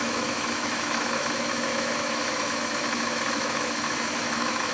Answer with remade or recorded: remade